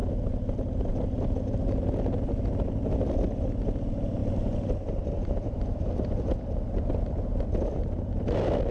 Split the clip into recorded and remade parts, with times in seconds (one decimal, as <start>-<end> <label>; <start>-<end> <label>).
0.0-8.7 recorded